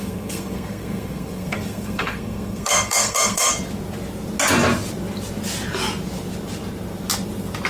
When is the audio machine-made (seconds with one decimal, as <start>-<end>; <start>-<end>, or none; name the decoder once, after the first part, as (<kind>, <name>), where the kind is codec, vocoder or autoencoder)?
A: 0.0-3.5 (codec, SNAC)